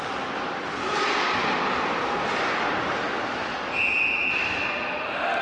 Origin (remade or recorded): recorded